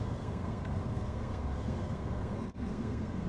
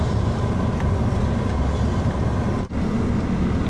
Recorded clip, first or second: second